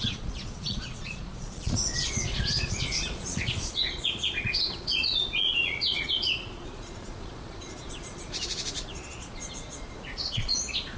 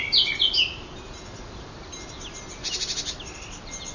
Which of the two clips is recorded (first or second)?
second